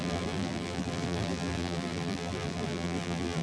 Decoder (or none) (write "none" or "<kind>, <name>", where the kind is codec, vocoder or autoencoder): vocoder, BigVGAN v2